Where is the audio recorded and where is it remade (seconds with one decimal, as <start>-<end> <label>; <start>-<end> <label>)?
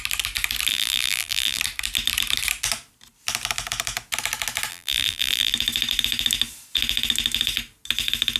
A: 0.0-0.7 recorded; 0.7-1.6 remade; 1.6-4.7 recorded; 4.7-5.5 remade; 5.5-8.4 recorded